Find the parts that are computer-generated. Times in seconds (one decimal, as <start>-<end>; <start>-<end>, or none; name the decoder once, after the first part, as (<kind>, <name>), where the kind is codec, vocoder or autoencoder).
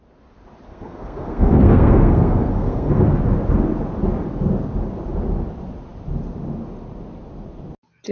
0.7-3.0 (codec, SNAC)